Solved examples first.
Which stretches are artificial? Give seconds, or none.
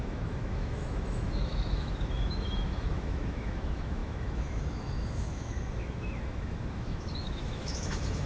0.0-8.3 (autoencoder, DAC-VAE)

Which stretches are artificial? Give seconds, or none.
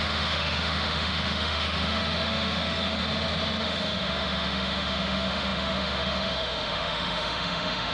0.0-3.0 (autoencoder, DAC-VAE); 3.6-7.9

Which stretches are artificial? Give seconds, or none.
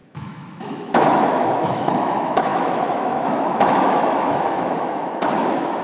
0.0-5.8 (autoencoder, DAC-VAE)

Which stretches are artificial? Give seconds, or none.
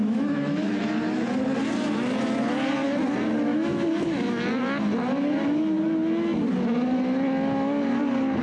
0.0-0.8 (autoencoder, DAC-VAE); 3.5-4.4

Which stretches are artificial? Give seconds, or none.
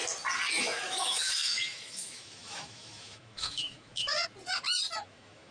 0.6-4.1 (autoencoder, DAC-VAE); 5.1-5.5